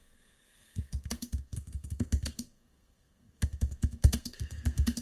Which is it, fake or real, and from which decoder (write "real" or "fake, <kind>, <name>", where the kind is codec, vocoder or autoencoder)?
fake, codec, SNAC